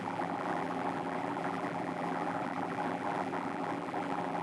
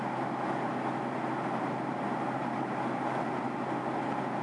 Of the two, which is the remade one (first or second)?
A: first